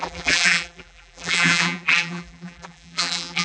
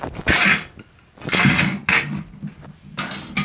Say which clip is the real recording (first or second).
second